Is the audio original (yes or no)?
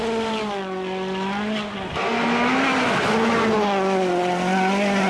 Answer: yes